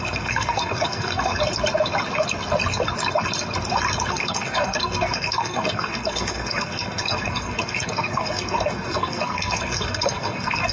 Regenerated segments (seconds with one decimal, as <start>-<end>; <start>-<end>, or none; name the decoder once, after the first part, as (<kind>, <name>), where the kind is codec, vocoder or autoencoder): 0.0-1.3 (codec, SNAC); 4.1-10.7